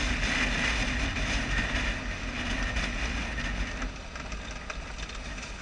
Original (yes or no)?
yes